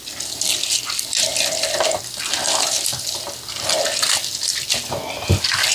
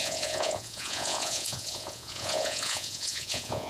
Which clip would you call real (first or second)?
first